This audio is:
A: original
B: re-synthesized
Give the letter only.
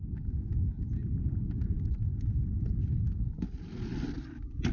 A